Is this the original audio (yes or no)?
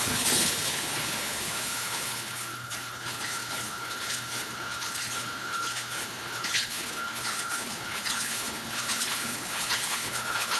no